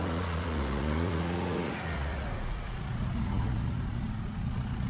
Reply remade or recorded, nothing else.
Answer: remade